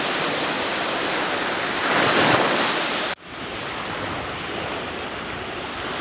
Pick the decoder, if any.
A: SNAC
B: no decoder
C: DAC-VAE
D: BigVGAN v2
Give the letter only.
B